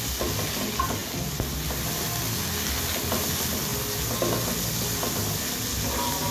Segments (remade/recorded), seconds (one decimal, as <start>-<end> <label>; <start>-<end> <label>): 0.0-6.3 recorded